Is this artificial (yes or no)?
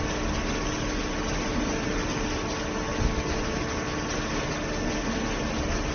no